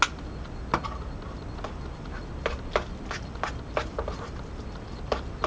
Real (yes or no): yes